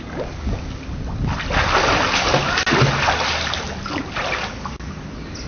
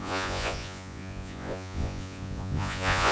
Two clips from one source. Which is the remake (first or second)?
second